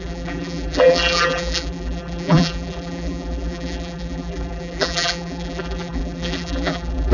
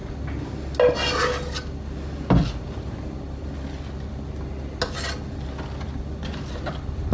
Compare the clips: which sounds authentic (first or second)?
second